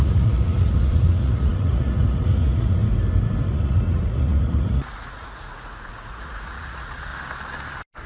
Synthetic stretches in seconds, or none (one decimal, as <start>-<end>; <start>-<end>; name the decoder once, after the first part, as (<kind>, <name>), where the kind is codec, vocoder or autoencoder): 0.0-2.8 (vocoder, Vocos); 3.5-7.1